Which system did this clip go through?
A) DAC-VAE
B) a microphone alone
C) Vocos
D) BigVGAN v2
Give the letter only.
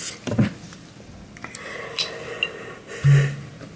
B